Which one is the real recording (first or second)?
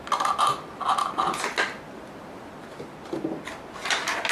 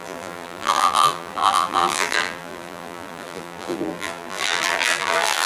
first